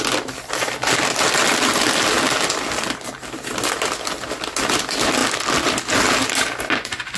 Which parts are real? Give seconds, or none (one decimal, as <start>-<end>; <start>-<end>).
0.0-7.2

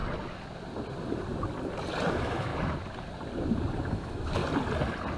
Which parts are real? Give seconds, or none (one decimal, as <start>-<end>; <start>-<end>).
0.0-2.1; 2.5-3.9; 4.4-5.2

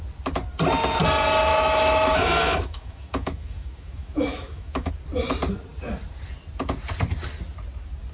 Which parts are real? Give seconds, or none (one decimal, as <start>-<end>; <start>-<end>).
0.0-1.5; 4.9-8.1

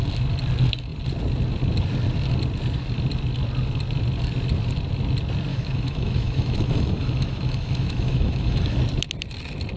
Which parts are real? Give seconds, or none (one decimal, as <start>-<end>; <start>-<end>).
0.0-5.5; 8.8-9.8

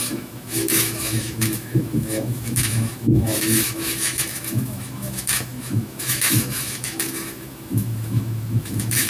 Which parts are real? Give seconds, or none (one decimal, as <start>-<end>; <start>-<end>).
none

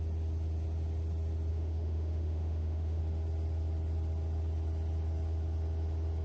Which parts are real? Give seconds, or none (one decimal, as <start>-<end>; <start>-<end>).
0.0-1.5; 3.0-6.2

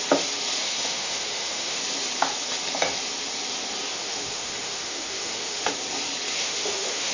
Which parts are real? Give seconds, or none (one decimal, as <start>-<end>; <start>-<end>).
0.0-0.6; 1.8-3.9; 5.7-6.4